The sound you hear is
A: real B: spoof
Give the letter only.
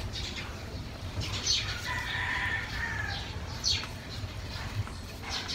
B